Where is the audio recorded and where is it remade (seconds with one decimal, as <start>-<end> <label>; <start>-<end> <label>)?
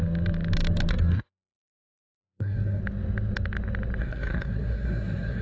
0.0-0.9 recorded; 0.9-2.8 remade; 2.8-4.0 recorded; 4.0-5.4 remade